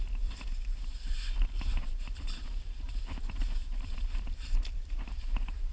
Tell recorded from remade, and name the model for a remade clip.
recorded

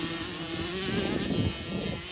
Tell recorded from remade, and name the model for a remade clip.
recorded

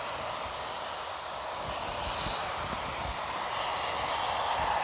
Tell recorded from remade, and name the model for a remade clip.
recorded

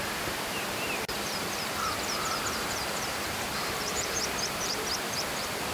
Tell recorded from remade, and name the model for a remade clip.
remade, vocoder, BigVGAN v2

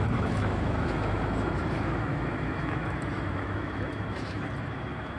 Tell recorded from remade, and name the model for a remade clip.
remade, autoencoder, DAC-VAE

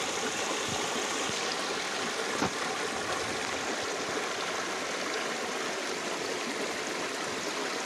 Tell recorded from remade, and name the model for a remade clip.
recorded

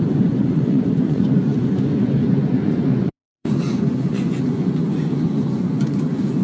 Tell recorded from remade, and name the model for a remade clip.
remade, vocoder, Vocos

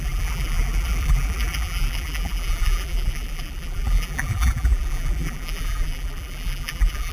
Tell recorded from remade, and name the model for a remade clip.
remade, vocoder, BigVGAN v2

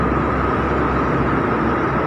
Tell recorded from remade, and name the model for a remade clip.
recorded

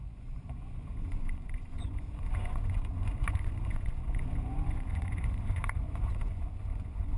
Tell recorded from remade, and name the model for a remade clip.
remade, vocoder, Vocos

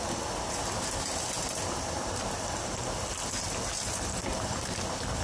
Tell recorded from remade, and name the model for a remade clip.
recorded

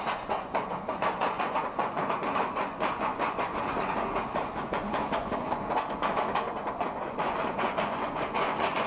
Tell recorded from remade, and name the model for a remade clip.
remade, vocoder, Vocos